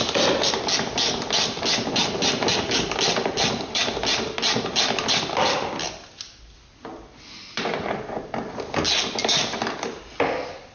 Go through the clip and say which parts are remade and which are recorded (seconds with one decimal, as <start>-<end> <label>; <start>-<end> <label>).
0.0-9.2 recorded; 9.2-9.7 remade; 9.7-10.7 recorded